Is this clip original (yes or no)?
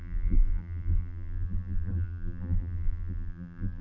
no